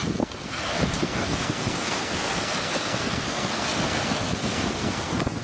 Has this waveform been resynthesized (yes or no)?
yes